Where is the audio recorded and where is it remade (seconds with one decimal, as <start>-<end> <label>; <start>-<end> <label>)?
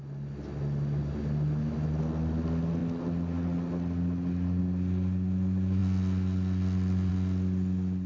0.0-8.1 recorded